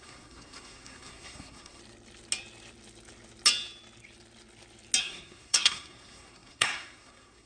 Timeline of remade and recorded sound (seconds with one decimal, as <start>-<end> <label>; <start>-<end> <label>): 0.0-1.8 remade; 1.8-5.0 recorded; 5.0-7.5 remade